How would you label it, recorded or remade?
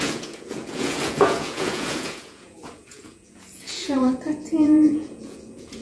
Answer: remade